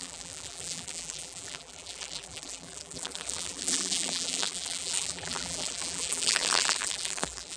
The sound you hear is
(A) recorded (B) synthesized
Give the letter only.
B